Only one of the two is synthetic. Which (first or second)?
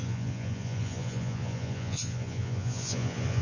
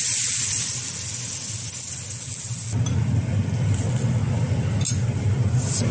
first